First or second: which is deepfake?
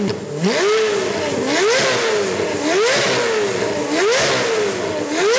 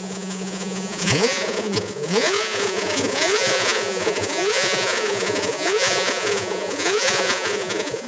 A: second